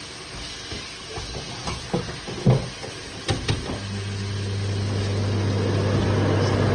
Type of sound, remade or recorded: recorded